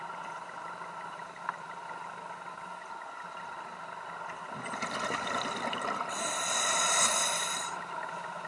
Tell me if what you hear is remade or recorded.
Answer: recorded